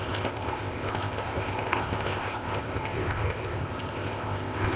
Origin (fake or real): fake